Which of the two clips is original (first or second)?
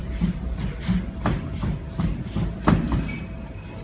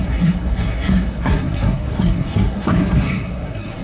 first